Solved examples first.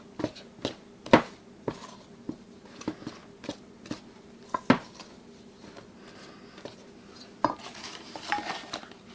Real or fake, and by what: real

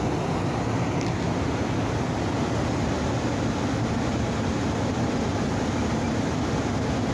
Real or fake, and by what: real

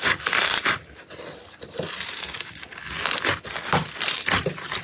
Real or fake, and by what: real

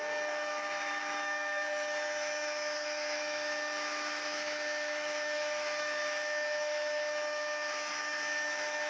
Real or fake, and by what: fake, autoencoder, DAC-VAE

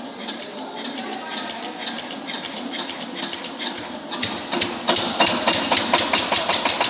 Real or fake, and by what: fake, vocoder, BigVGAN v2